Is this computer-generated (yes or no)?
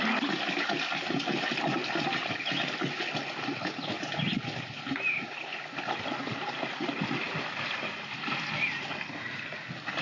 no